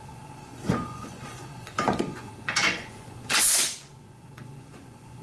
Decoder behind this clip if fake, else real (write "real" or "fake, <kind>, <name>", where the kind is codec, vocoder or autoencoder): fake, vocoder, Vocos